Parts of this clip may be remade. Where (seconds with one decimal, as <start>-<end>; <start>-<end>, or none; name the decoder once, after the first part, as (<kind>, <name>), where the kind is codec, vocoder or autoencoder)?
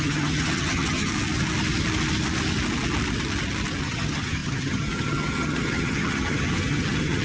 0.0-1.1 (vocoder, HiFi-GAN); 3.8-7.2